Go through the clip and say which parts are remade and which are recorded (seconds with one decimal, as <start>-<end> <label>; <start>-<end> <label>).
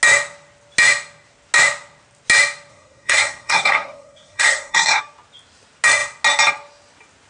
0.0-2.7 recorded; 2.7-5.0 remade; 5.0-7.3 recorded